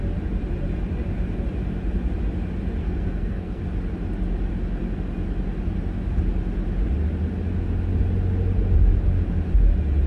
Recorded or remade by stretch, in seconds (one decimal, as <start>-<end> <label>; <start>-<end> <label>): 0.0-2.8 recorded; 2.8-3.6 remade; 3.6-10.1 recorded

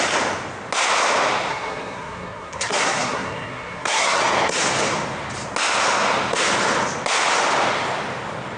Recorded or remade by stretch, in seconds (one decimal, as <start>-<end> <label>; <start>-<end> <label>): 0.0-1.5 recorded; 1.5-4.2 remade; 4.2-8.6 recorded

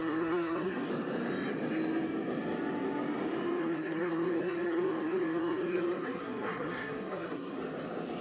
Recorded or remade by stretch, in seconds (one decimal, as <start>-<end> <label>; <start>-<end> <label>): 0.0-0.9 remade; 0.9-3.6 recorded; 3.6-7.6 remade; 7.6-8.2 recorded

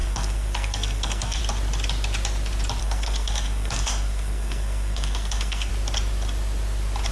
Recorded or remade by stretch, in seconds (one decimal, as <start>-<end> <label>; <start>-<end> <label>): 0.0-1.4 remade; 1.4-2.8 recorded; 2.8-5.7 remade; 5.7-7.1 recorded